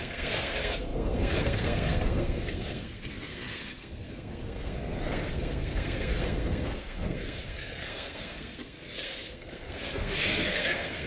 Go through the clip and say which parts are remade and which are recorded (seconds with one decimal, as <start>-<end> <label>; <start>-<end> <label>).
0.0-11.1 remade